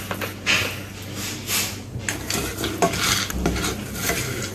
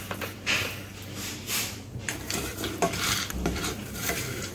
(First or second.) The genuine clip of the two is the first